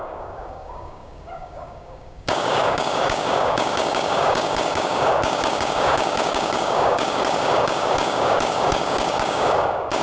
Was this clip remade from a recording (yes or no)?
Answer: yes